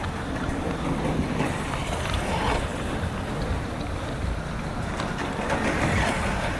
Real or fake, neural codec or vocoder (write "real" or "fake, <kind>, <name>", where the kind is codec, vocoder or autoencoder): real